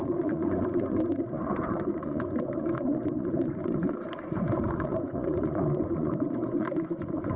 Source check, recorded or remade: remade